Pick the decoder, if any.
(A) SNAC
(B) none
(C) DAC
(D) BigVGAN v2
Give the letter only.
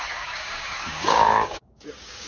C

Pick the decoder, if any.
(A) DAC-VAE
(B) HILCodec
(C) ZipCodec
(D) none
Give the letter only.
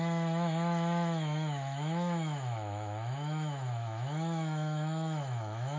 A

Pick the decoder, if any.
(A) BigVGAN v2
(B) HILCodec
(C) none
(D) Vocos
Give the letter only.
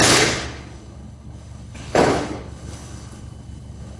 B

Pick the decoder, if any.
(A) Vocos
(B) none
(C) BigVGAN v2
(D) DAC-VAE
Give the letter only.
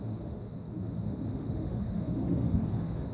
D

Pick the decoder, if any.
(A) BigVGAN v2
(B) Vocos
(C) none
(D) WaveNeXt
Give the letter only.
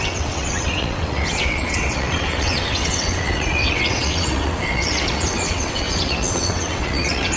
D